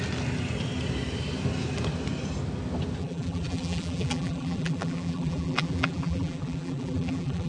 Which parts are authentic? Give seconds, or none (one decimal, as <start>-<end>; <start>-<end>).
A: 0.0-3.0